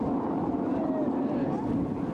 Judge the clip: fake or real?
real